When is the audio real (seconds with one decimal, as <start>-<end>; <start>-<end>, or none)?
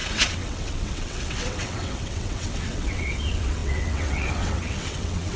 none